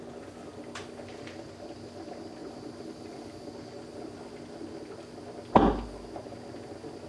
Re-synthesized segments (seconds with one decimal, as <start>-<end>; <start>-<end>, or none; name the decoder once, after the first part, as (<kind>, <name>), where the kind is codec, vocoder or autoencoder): none